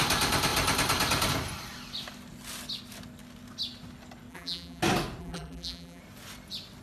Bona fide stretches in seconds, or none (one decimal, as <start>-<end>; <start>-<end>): 0.0-4.3; 4.8-5.2; 6.0-6.8